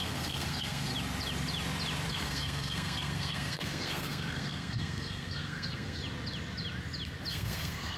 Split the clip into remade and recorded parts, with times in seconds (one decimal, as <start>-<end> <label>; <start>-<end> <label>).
0.0-0.9 remade; 0.9-2.1 recorded; 2.1-6.0 remade; 6.0-7.3 recorded; 7.3-8.0 remade